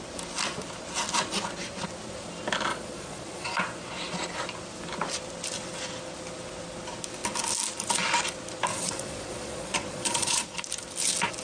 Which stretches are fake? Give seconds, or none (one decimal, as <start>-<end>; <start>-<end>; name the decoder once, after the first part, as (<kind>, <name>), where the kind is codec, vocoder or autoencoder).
2.7-3.6 (vocoder, Vocos); 8.7-10.6